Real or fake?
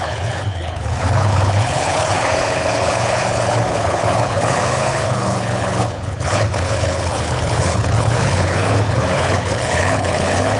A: fake